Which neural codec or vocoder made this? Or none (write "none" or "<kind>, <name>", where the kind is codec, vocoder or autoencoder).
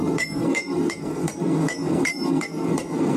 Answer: codec, SNAC